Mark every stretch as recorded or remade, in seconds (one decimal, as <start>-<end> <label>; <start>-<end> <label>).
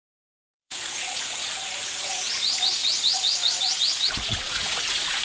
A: 0.0-5.2 remade